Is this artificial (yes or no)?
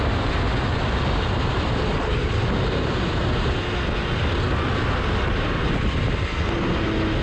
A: no